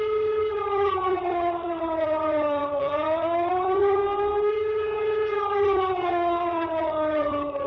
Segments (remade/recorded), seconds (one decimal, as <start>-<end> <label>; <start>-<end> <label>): 0.0-4.0 remade; 4.0-4.5 recorded; 4.5-7.7 remade